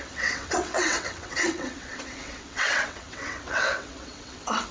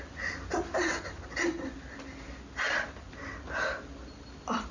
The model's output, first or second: first